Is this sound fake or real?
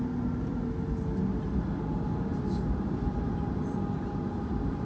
real